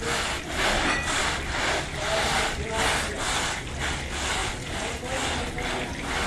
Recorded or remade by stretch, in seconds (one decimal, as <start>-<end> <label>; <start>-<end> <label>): 0.0-6.3 recorded